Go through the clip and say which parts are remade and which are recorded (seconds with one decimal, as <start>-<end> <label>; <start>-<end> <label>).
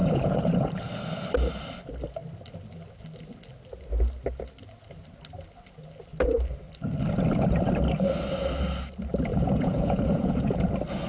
0.0-0.7 remade; 0.7-9.3 recorded; 9.3-10.7 remade; 10.7-11.1 recorded